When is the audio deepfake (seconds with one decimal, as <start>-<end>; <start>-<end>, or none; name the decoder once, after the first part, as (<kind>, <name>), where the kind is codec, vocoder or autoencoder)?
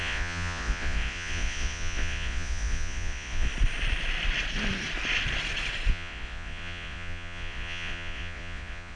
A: 0.0-3.5 (vocoder, Vocos); 5.9-9.0